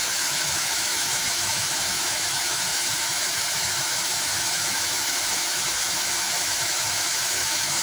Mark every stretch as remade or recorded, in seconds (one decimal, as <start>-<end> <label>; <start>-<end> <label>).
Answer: 0.0-7.8 remade

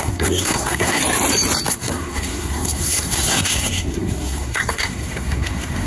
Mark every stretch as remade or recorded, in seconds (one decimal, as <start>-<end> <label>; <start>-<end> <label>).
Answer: 0.0-1.0 remade; 1.0-1.7 recorded; 1.7-5.9 remade

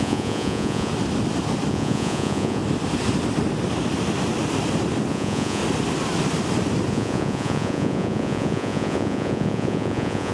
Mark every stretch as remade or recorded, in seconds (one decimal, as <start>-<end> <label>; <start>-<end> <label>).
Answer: 0.0-0.9 remade; 0.9-1.7 recorded; 1.7-2.6 remade; 2.6-5.1 recorded; 5.1-5.6 remade; 5.6-6.9 recorded; 6.9-10.3 remade

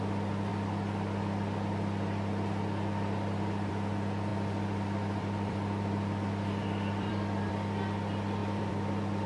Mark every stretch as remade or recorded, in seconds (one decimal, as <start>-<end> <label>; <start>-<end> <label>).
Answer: 0.0-4.3 recorded; 4.3-7.5 remade; 7.5-8.4 recorded; 8.4-9.3 remade